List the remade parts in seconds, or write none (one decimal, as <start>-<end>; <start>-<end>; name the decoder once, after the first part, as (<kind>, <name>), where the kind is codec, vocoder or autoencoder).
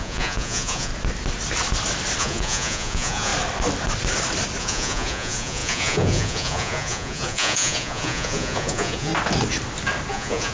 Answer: 0.0-0.9 (vocoder, Vocos); 2.2-3.3; 4.6-9.1; 10.1-10.5